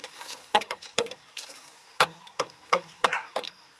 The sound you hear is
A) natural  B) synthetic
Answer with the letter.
B